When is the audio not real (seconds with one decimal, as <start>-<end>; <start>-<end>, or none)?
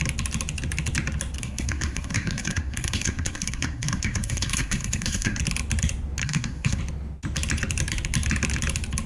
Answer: 1.4-5.4; 6.2-6.8